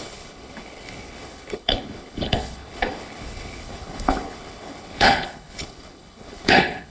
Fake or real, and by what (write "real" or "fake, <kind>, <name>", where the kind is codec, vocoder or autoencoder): fake, codec, HILCodec